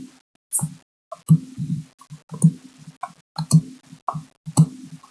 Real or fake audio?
real